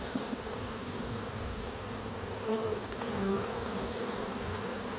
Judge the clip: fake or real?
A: fake